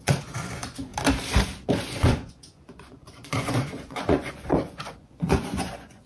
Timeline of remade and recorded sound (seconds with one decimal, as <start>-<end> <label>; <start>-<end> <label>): 0.0-0.9 remade; 0.9-1.7 recorded; 1.7-6.1 remade